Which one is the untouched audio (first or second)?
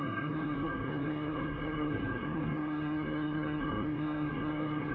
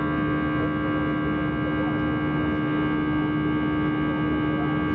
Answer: second